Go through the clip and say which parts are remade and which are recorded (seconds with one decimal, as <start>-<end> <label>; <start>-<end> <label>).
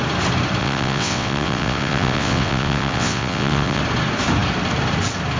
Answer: 0.0-0.6 recorded; 0.6-3.8 remade; 3.8-5.4 recorded